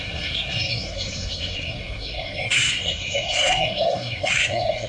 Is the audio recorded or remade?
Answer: remade